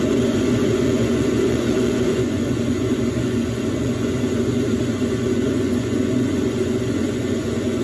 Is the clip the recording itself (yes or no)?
no